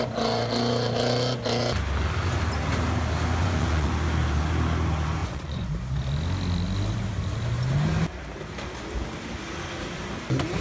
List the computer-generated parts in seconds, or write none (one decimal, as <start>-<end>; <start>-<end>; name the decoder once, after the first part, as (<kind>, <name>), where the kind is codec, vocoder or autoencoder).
3.4-3.9 (vocoder, Vocos); 5.2-5.7